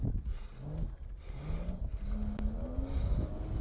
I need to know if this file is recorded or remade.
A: recorded